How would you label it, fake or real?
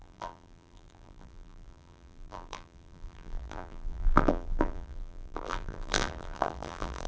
fake